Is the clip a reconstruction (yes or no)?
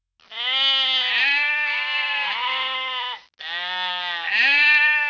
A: no